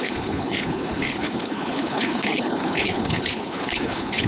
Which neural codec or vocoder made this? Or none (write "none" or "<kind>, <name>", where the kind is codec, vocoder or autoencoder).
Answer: codec, HILCodec